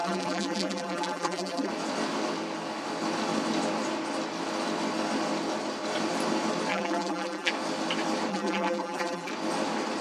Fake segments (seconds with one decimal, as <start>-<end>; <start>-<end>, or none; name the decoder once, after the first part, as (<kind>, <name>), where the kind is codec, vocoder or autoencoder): 0.0-1.7 (vocoder, BigVGAN v2); 6.7-7.5; 8.3-9.3